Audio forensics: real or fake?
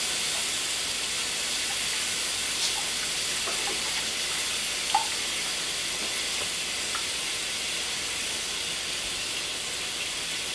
real